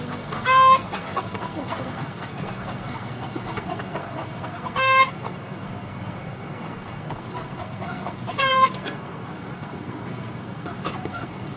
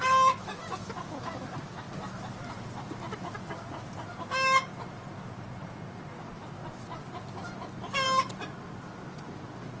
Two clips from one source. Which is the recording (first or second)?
second